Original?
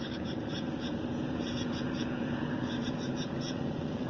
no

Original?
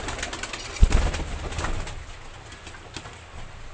yes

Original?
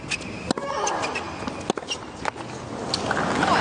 yes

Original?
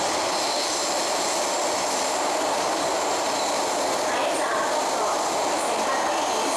yes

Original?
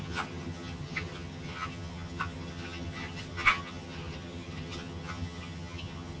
no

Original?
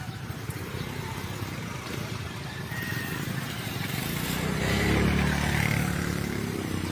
no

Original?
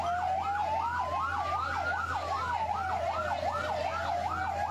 yes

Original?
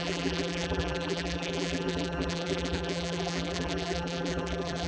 no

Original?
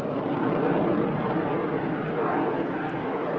yes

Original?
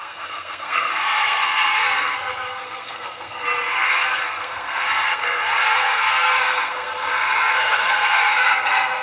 no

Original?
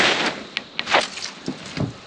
yes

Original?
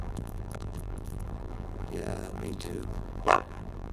no